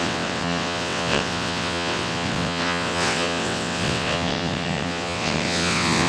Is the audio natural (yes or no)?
no